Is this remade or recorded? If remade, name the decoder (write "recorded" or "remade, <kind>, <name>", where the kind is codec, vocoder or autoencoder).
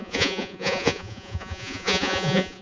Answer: remade, vocoder, Vocos